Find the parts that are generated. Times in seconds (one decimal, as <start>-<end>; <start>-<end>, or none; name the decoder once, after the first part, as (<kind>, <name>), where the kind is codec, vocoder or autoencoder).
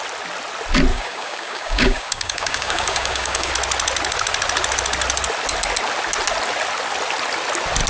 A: 0.9-3.5 (codec, DAC)